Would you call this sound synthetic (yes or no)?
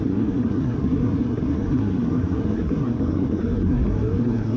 yes